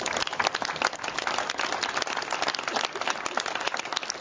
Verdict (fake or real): real